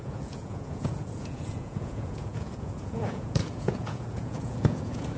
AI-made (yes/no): yes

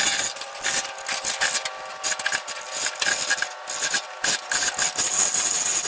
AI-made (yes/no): no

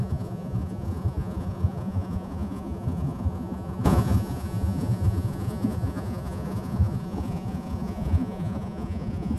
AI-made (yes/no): yes